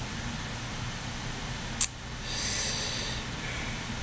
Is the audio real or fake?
real